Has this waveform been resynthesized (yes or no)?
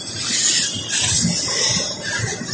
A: no